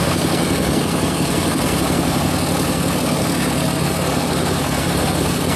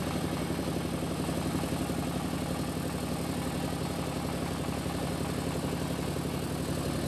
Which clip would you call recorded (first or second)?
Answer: second